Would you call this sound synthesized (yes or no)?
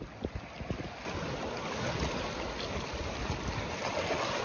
no